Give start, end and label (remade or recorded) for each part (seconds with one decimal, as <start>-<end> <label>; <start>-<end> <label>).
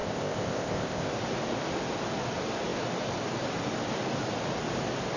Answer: 0.0-1.1 remade; 1.1-5.2 recorded